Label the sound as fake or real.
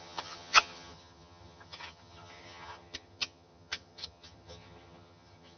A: fake